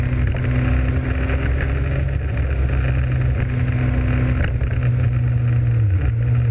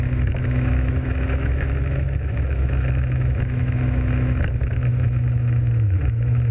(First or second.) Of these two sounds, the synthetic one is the second